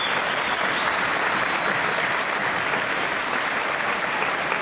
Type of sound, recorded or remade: recorded